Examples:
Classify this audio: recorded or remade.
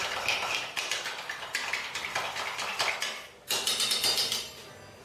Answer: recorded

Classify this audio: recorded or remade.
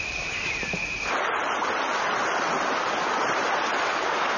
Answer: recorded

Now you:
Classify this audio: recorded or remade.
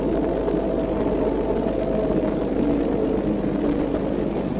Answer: recorded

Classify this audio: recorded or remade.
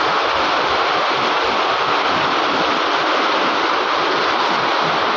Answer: recorded